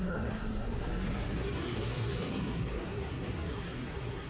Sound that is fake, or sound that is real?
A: fake